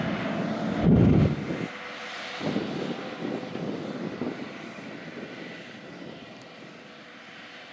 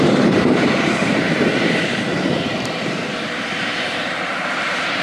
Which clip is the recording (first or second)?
first